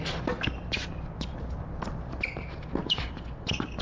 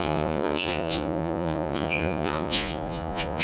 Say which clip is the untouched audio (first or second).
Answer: first